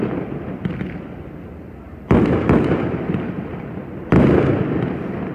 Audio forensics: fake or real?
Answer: real